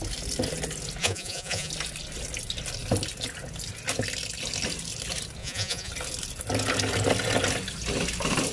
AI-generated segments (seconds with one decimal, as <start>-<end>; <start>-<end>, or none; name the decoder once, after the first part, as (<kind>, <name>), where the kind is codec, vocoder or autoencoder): 1.0-1.7 (vocoder, Vocos); 5.4-5.9